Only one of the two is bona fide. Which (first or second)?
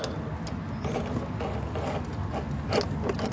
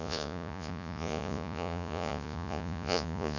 first